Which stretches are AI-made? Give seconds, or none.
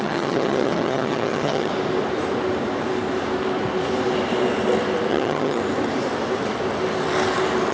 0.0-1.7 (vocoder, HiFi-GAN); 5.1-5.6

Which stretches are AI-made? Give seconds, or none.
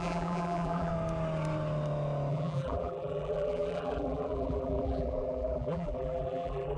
0.0-0.9 (vocoder, BigVGAN v2); 2.3-6.8